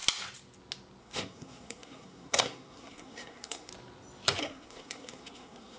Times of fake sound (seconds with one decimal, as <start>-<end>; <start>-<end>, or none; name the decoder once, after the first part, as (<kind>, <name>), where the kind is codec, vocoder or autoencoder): 1.0-3.7 (codec, SNAC); 4.4-5.8